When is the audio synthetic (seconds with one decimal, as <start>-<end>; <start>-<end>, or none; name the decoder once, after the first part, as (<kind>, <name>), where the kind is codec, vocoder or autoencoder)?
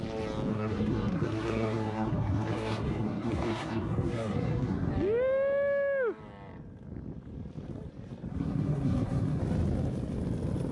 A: 0.5-4.9 (codec, SNAC); 8.3-9.4